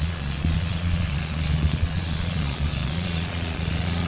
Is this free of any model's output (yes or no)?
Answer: no